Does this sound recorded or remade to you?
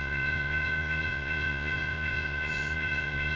remade